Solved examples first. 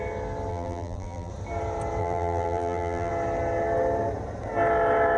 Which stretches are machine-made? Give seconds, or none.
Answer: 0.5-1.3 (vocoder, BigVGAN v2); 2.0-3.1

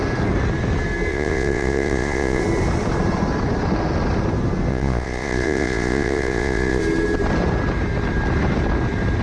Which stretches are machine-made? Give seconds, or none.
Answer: 1.1-2.4 (vocoder, Vocos); 4.7-6.8

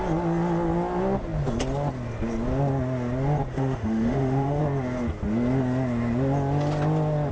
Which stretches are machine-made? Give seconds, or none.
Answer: 3.5-4.6 (autoencoder, DAC-VAE)

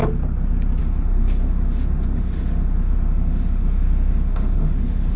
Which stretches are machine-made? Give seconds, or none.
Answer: 0.8-5.2 (autoencoder, DAC-VAE)

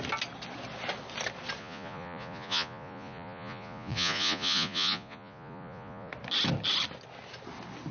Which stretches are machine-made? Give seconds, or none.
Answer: 1.6-6.1 (vocoder, Vocos)